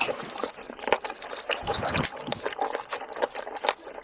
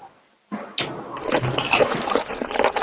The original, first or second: second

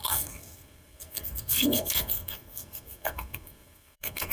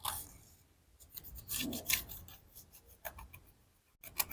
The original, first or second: second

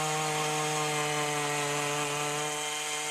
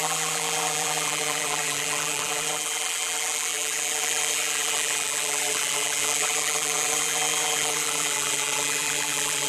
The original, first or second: first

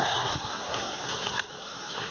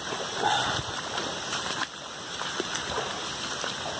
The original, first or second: second